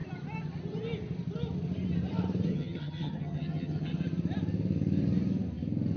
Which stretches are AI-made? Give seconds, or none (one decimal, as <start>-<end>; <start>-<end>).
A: 2.5-3.9